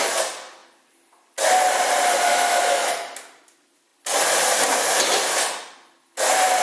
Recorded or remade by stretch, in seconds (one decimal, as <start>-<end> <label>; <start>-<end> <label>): 0.0-2.3 recorded; 2.3-2.9 remade; 2.9-6.6 recorded